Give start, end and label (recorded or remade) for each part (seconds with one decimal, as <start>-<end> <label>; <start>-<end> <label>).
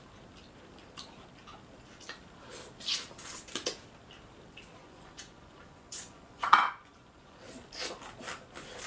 0.0-4.8 recorded; 4.8-7.4 remade; 7.4-8.9 recorded